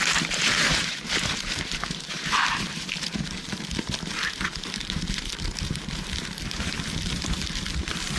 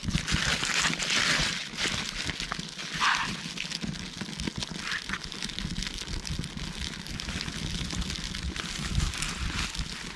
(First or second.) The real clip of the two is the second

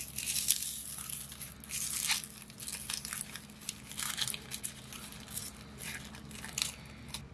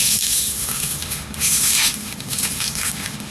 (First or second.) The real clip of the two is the first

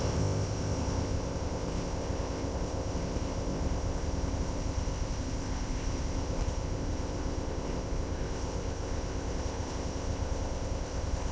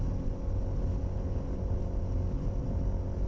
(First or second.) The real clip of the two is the second